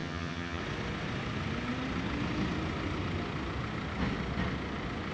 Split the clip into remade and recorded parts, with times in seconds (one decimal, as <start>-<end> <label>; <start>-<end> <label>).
0.0-0.6 remade; 0.6-5.1 recorded